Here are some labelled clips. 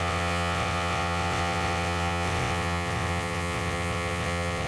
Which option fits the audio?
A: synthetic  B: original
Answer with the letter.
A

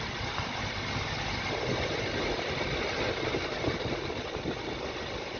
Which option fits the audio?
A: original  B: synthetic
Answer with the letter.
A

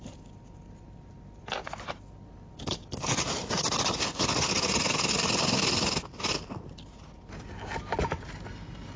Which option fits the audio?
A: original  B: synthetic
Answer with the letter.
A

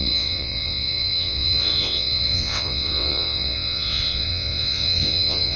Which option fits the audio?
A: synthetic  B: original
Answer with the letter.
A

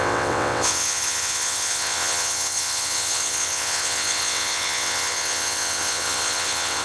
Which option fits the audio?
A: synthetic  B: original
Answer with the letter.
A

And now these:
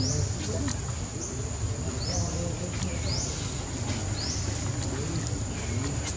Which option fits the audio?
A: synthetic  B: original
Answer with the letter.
B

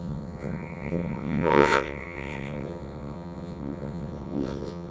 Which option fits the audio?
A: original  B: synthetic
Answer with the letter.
B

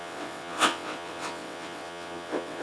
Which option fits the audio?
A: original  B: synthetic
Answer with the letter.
B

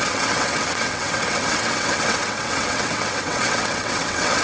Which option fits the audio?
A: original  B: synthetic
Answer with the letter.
B